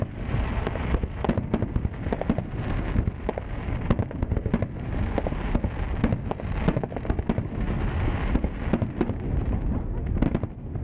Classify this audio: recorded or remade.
recorded